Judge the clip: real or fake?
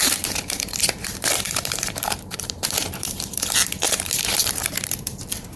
fake